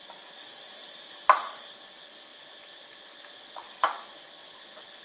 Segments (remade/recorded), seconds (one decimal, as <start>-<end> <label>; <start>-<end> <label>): 0.0-5.0 recorded

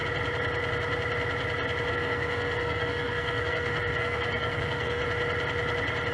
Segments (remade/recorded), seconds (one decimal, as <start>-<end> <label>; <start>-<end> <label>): 0.0-1.9 recorded; 1.9-5.0 remade; 5.0-6.1 recorded

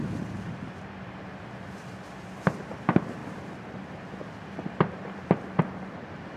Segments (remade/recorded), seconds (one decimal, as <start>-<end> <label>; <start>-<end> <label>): 0.0-3.2 remade; 3.2-4.2 recorded; 4.2-6.4 remade

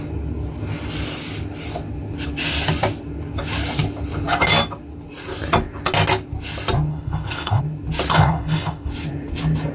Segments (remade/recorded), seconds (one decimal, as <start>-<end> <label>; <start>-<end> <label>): 0.0-6.9 recorded; 6.9-7.6 remade; 7.6-8.1 recorded; 8.1-8.9 remade; 8.9-9.7 recorded

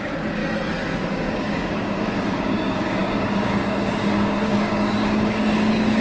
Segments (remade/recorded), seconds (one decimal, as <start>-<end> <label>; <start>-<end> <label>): 0.0-0.4 remade; 0.4-1.1 recorded; 1.1-6.0 remade